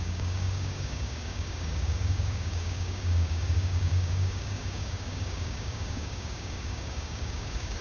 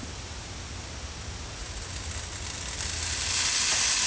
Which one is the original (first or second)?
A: second